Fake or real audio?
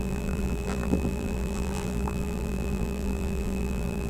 fake